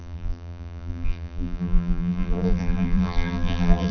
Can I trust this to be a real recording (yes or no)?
no